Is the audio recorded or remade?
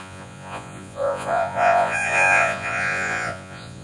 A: remade